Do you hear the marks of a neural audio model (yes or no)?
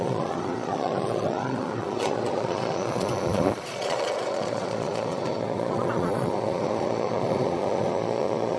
yes